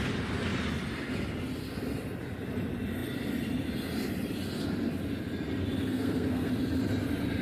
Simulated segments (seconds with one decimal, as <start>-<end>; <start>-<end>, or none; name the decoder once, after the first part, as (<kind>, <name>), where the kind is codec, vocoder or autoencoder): 5.8-6.5 (codec, SNAC)